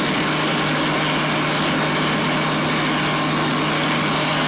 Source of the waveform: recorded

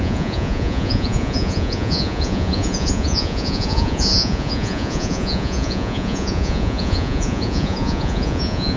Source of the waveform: remade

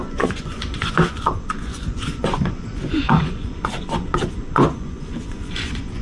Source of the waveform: remade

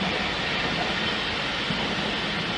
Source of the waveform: recorded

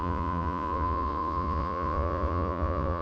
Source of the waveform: remade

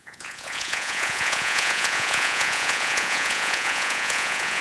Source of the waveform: remade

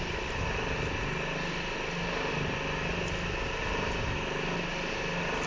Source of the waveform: recorded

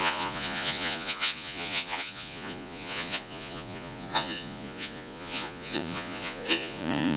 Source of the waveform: remade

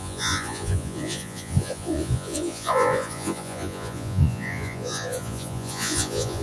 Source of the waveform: remade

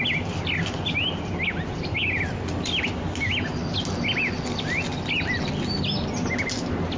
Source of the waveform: recorded